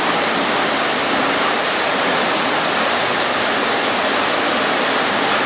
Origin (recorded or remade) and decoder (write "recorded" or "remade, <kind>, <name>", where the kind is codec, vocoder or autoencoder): remade, vocoder, BigVGAN v2